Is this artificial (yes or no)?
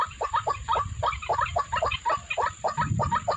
no